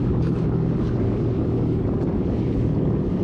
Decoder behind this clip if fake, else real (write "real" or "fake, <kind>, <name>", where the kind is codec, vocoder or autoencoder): fake, codec, DAC